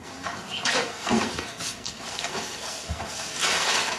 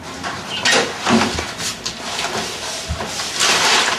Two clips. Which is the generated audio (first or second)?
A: first